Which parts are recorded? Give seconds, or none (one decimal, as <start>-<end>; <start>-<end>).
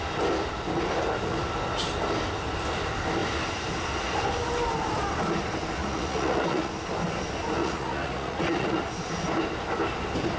0.0-5.8; 6.7-7.6; 8.8-10.4